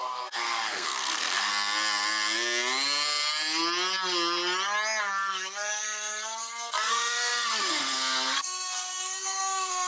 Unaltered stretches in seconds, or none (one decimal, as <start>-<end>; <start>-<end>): 1.5-5.0